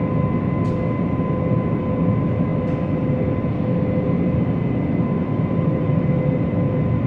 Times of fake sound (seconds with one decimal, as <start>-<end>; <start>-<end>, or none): 5.2-5.9